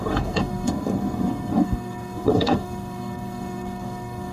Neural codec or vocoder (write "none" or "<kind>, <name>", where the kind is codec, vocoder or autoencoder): codec, SNAC